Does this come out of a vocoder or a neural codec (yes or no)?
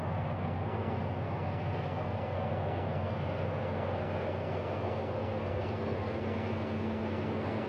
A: yes